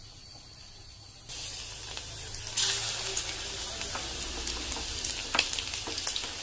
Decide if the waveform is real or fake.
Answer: real